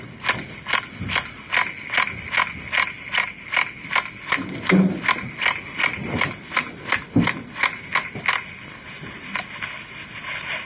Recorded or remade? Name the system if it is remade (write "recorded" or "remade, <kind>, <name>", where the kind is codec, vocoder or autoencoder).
recorded